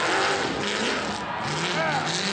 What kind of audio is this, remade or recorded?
recorded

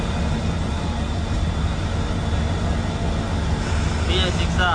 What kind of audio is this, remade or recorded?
recorded